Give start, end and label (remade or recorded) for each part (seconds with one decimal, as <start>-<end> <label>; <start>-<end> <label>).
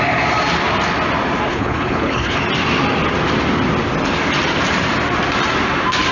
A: 0.0-1.5 recorded; 1.5-2.4 remade; 2.4-6.1 recorded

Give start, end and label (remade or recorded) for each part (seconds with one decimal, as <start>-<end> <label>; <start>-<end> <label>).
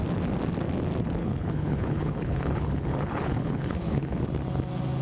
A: 0.0-1.2 recorded; 1.2-4.2 remade; 4.2-5.0 recorded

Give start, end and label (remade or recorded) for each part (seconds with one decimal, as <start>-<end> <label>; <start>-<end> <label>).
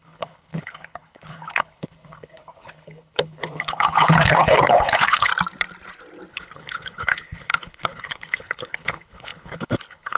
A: 0.0-5.3 remade; 5.3-6.3 recorded; 6.3-10.2 remade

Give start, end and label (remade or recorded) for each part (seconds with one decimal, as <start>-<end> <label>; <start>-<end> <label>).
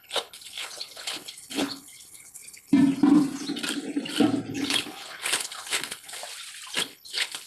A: 0.0-2.7 remade; 2.7-4.5 recorded; 4.5-6.2 remade; 6.2-6.8 recorded; 6.8-7.5 remade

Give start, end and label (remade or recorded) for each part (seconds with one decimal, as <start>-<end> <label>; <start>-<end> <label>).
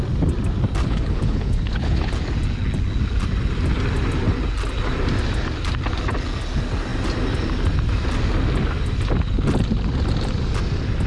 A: 0.0-0.8 recorded; 0.8-2.1 remade; 2.1-11.1 recorded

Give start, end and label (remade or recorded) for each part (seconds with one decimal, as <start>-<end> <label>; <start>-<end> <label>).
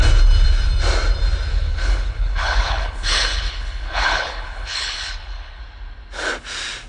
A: 0.0-1.5 recorded; 1.5-5.6 remade; 5.6-6.9 recorded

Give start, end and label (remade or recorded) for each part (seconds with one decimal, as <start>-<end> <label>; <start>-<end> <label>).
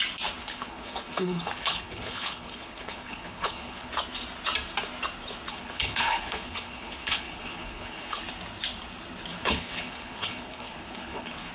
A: 0.0-0.4 recorded; 0.4-3.9 remade; 3.9-5.5 recorded; 5.5-8.2 remade; 8.2-9.3 recorded; 9.3-11.5 remade